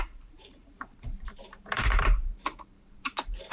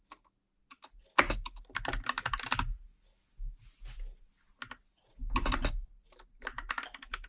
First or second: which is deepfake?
first